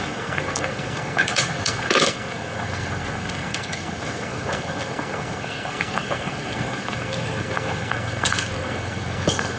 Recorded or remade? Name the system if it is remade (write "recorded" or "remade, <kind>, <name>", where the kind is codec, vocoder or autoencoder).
remade, codec, SNAC